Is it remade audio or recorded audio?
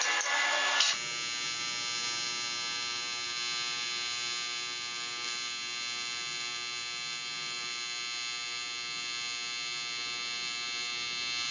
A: recorded